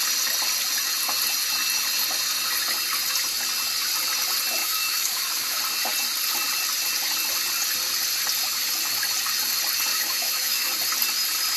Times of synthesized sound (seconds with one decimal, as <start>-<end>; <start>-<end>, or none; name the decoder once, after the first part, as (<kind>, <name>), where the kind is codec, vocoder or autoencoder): 4.6-5.6 (autoencoder, DAC-VAE); 9.9-10.7

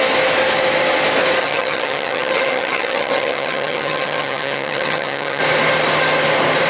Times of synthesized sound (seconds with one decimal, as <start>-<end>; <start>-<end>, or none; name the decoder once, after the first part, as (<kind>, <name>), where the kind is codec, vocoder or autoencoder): 1.4-5.4 (vocoder, HiFi-GAN)

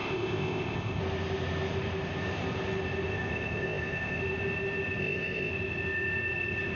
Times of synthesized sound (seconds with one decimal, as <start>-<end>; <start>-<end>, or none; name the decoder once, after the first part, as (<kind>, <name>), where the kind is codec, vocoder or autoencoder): 0.0-1.0 (codec, ZipCodec); 3.1-4.2; 5.0-5.5

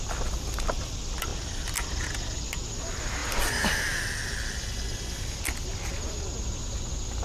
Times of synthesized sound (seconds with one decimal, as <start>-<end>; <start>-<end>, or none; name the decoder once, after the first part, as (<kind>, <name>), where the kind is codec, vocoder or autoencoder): none